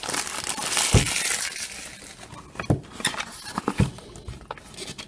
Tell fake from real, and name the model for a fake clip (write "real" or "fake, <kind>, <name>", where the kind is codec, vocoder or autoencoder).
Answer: real